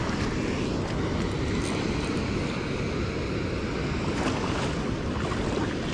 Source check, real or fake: real